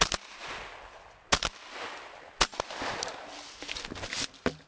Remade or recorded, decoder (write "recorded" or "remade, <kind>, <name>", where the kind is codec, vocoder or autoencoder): recorded